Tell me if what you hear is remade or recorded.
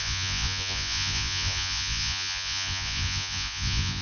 remade